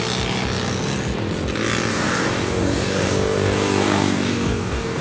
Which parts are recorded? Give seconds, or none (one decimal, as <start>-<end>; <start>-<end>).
0.0-1.9